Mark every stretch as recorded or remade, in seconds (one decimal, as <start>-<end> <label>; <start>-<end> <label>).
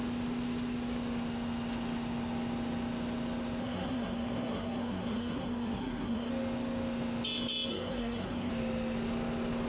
0.0-3.6 recorded; 3.6-6.3 remade; 6.3-7.7 recorded; 7.7-8.5 remade; 8.5-9.7 recorded